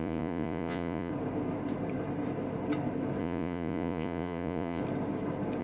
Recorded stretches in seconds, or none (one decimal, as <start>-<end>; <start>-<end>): 1.1-3.2; 4.8-5.6